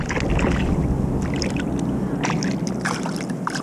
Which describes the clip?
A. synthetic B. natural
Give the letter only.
B